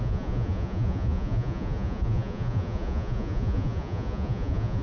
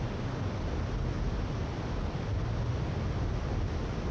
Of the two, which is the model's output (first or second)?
first